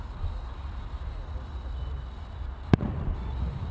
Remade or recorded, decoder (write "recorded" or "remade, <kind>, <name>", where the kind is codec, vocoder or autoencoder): recorded